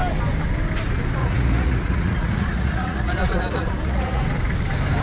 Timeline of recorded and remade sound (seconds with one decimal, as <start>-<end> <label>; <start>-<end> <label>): 0.0-1.2 recorded; 1.2-4.2 remade; 4.2-5.0 recorded